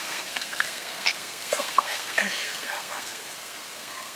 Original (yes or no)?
no